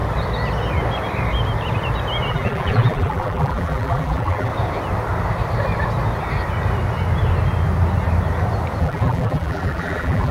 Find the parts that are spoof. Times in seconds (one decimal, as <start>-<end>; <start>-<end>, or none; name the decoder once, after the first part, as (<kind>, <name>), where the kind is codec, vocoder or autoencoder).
2.3-4.5 (vocoder, BigVGAN v2); 8.8-10.3